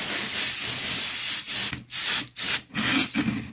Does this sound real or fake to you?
real